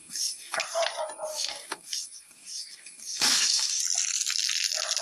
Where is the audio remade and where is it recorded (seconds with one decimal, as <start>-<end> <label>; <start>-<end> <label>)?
0.0-0.6 remade; 0.6-1.3 recorded; 1.3-3.8 remade; 3.8-5.0 recorded